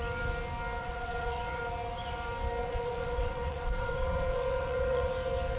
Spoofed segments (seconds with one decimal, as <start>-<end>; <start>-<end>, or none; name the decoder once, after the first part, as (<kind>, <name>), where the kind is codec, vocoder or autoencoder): 0.8-1.6 (vocoder, WaveNeXt); 2.6-5.1